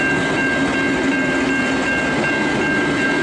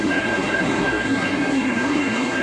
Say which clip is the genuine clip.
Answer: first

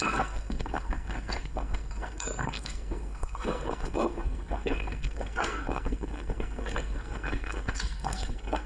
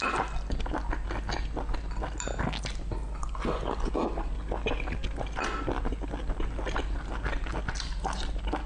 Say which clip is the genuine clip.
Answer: second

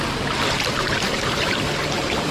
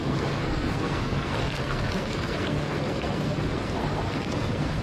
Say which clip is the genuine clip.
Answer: first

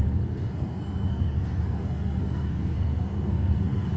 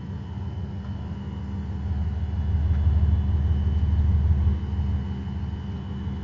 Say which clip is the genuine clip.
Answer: second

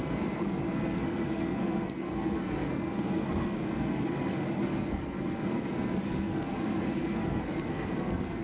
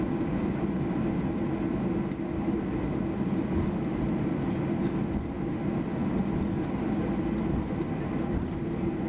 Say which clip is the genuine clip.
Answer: second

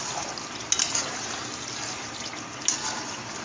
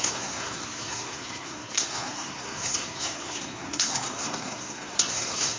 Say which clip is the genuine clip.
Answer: first